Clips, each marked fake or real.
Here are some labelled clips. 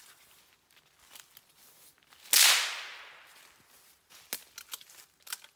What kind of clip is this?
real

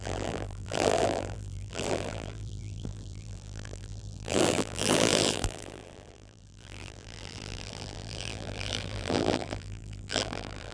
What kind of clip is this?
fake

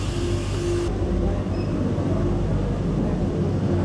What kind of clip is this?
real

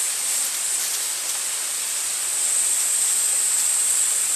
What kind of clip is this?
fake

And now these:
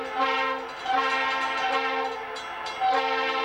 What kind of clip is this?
real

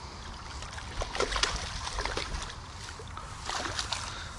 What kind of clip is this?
fake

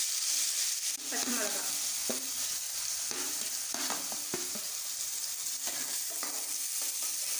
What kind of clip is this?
fake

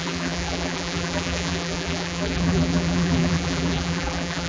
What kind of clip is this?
fake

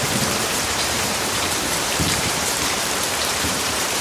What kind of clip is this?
fake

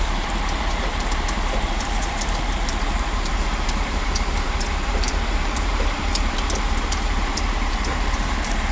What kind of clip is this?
fake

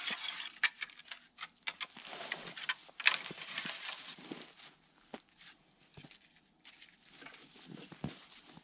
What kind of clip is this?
real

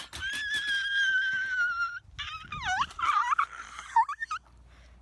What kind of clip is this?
real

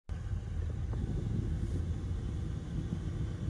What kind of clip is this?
real